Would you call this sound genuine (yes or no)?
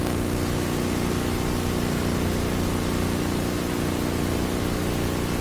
yes